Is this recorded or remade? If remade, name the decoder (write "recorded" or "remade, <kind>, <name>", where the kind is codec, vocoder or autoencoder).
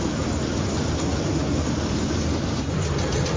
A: recorded